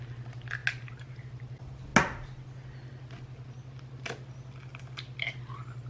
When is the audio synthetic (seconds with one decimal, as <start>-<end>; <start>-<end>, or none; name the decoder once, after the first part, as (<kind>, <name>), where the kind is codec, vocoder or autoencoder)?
0.0-0.6 (vocoder, BigVGAN v2); 1.2-1.9; 5.4-5.9